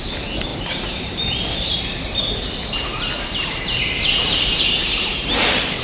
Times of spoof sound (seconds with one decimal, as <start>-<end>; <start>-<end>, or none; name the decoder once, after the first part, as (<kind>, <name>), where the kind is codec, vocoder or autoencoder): 0.0-1.9 (vocoder, BigVGAN v2); 4.0-5.8